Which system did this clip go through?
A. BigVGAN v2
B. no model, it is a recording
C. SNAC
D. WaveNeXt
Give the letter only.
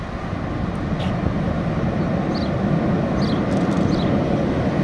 B